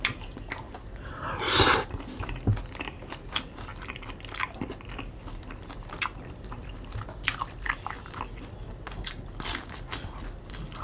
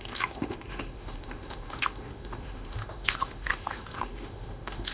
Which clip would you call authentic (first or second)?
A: first